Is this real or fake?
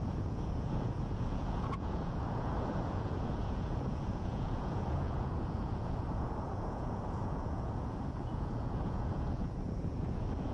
fake